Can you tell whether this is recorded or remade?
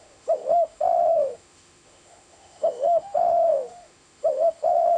remade